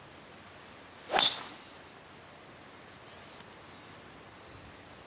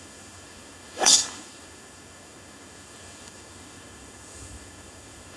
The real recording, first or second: first